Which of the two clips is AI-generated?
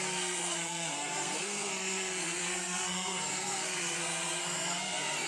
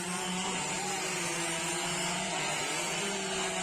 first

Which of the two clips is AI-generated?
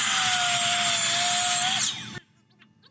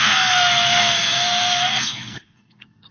second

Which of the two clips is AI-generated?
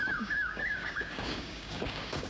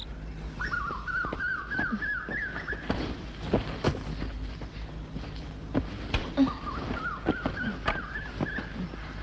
first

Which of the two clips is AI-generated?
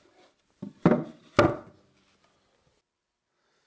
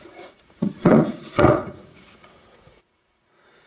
second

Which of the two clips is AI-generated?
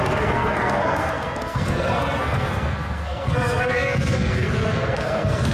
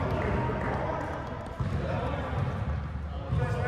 first